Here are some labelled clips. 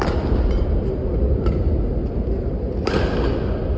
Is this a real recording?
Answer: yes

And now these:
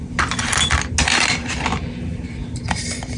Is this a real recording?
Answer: yes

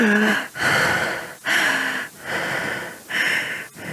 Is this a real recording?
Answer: yes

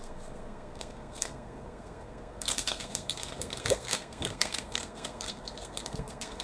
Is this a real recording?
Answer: no